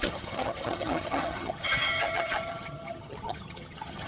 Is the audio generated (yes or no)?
yes